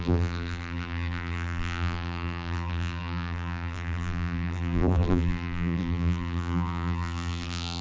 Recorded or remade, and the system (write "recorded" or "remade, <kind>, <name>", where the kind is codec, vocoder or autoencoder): remade, vocoder, BigVGAN v2